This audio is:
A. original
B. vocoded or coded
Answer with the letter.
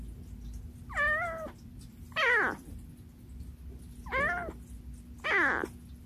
A